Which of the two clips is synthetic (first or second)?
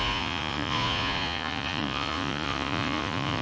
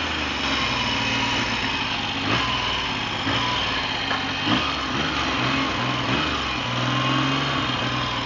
first